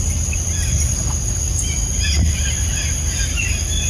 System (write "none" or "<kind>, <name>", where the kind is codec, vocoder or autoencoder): none